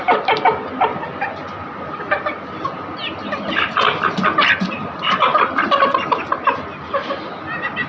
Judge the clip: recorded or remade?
recorded